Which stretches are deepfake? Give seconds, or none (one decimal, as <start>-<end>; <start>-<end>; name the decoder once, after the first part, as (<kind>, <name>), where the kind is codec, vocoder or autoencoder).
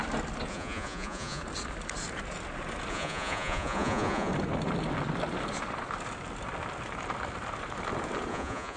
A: 0.5-1.4 (vocoder, Vocos); 2.9-4.3; 8.3-8.8